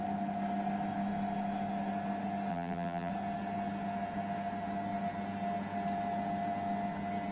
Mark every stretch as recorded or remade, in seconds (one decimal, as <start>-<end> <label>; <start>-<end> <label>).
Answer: 0.0-2.5 recorded; 2.5-3.1 remade; 3.1-7.3 recorded